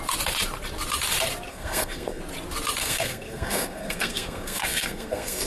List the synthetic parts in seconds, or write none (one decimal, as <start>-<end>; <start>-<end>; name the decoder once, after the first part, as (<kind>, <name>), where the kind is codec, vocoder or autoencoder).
1.5-2.2 (codec, SNAC); 2.8-5.5